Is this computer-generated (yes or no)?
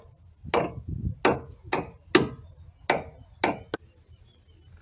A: no